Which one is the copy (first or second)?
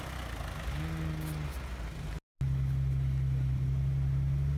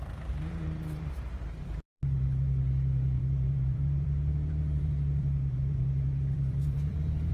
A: second